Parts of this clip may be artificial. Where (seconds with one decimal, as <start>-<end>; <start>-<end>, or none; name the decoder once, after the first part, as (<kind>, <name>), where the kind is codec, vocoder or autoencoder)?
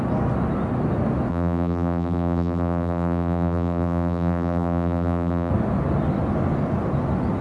1.3-5.5 (vocoder, BigVGAN v2)